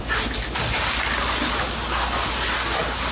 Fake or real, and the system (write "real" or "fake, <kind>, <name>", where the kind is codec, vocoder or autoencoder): real